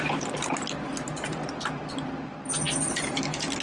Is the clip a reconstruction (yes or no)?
no